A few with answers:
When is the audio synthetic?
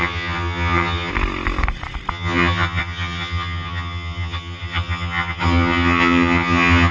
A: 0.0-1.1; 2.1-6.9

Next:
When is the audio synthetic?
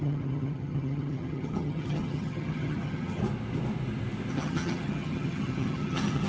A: 0.0-3.2; 4.3-6.3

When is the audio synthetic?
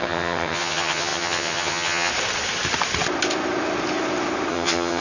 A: 0.0-2.1; 4.5-5.0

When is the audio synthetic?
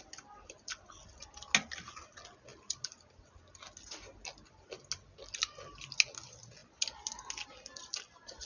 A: none